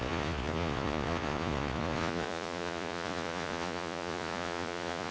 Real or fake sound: fake